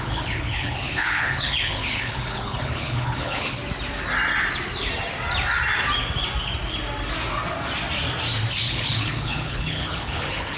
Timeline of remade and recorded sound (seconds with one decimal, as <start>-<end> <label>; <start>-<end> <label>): 0.0-3.6 remade; 3.6-8.6 recorded; 8.6-10.6 remade